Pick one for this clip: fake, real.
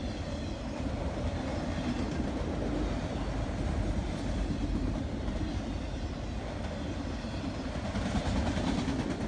real